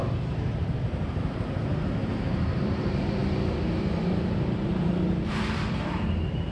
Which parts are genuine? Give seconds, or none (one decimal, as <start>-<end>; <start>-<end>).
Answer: 3.2-4.0